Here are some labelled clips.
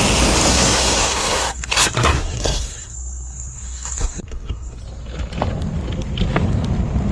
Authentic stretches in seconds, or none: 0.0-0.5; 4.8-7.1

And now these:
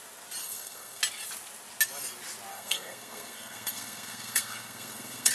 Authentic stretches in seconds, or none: 0.0-0.4; 1.0-2.5

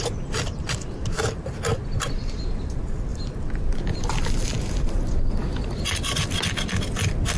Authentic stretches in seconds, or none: 0.0-7.4

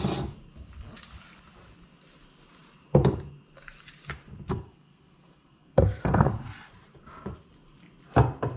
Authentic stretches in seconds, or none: 0.0-4.5; 6.3-8.6

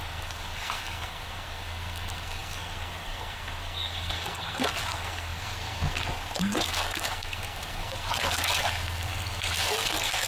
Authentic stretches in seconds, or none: none